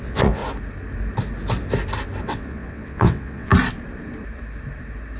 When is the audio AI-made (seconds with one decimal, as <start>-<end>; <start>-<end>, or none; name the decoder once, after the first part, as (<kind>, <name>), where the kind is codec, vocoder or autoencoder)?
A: 0.0-0.4 (vocoder, WaveNeXt); 2.2-3.5